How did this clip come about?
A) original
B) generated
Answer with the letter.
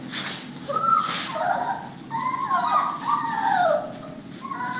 A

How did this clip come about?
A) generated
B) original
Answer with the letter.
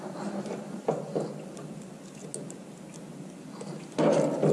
B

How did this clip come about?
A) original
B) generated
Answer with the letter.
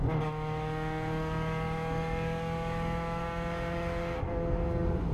B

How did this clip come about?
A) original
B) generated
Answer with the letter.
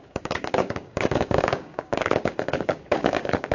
B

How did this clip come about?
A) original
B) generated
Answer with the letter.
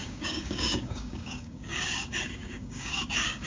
B